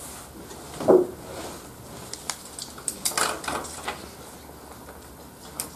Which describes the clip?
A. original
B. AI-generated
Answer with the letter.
A